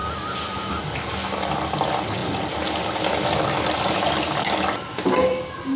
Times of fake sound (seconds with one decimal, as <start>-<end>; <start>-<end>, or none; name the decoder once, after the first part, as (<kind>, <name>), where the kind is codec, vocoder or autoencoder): 0.0-2.2 (vocoder, BigVGAN v2); 4.4-5.8